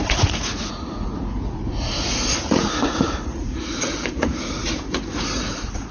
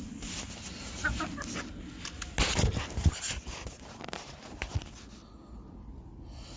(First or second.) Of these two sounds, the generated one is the first